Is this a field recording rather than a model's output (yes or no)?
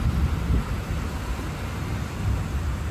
yes